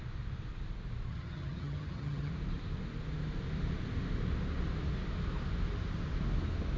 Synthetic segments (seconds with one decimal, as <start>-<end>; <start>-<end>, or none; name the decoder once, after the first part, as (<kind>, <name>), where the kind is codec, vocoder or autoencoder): 1.1-2.3 (vocoder, HiFi-GAN)